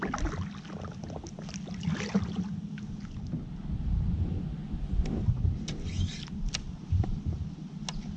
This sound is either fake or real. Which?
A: real